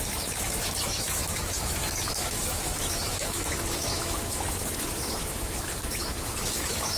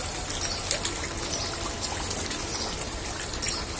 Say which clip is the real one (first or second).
second